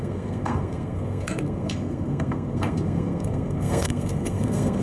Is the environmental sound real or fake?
fake